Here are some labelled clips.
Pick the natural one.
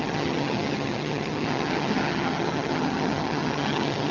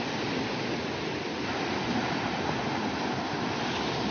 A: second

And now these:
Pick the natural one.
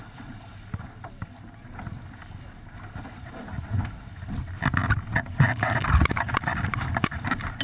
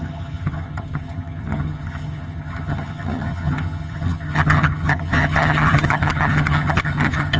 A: first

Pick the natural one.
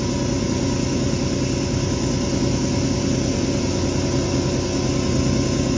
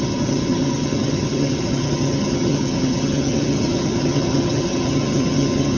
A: first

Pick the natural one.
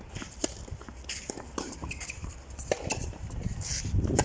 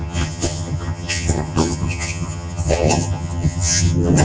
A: first